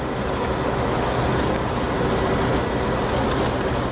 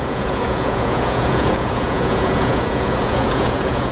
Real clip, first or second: first